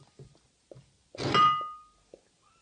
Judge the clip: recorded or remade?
recorded